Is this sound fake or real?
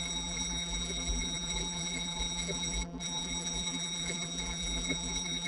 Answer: fake